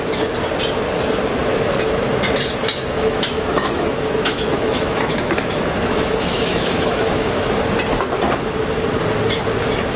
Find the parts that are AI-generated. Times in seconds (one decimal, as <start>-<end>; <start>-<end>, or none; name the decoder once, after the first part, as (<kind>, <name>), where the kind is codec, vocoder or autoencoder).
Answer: 1.5-2.1 (autoencoder, DAC-VAE); 2.8-7.5